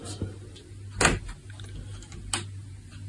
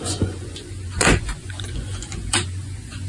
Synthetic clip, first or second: second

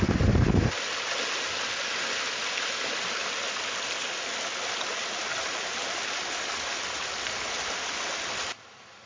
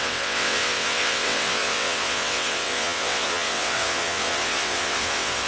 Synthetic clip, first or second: second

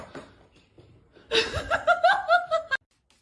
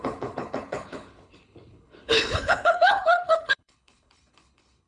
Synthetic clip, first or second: second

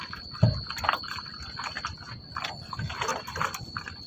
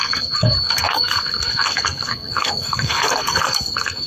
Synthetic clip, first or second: second